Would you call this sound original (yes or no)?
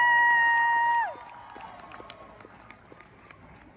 yes